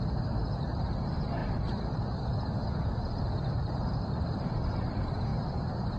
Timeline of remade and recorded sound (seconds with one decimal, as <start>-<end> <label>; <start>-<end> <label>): 0.0-1.4 remade; 1.4-3.6 recorded; 3.6-6.0 remade